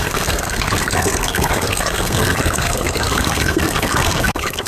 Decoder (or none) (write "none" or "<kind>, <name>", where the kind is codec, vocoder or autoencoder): codec, SNAC